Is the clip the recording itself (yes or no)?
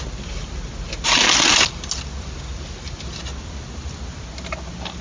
yes